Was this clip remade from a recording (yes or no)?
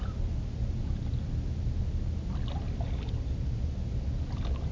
no